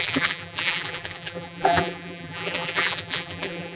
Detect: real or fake fake